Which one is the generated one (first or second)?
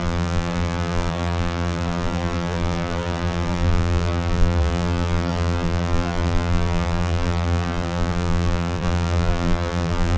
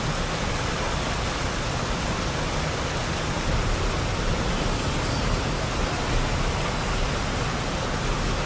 first